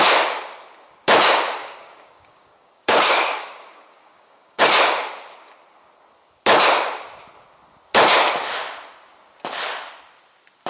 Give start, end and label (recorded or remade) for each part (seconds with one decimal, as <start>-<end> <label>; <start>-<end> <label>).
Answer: 0.0-1.6 recorded; 1.6-4.6 remade; 4.6-10.7 recorded